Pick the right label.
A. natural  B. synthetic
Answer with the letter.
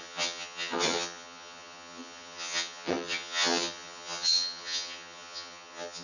B